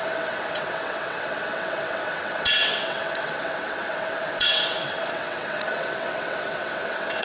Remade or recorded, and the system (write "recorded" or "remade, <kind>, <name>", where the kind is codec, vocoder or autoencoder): remade, vocoder, WaveNeXt